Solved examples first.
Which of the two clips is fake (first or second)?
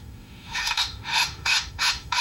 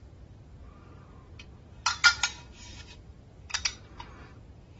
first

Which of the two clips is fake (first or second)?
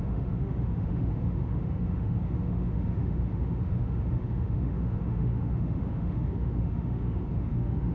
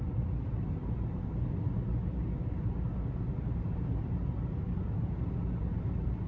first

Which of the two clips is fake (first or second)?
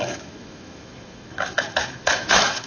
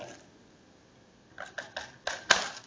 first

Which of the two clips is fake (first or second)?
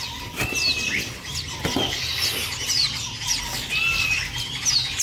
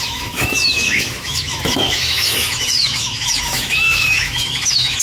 second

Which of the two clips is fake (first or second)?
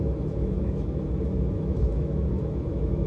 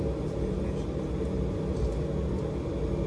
first